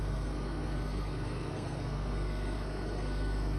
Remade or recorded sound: remade